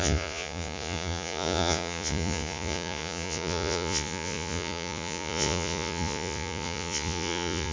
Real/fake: fake